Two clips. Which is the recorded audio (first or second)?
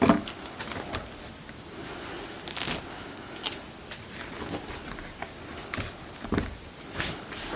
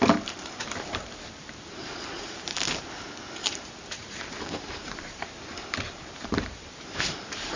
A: first